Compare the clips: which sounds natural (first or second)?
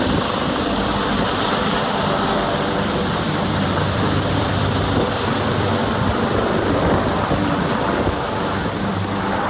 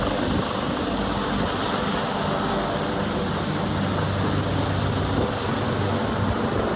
second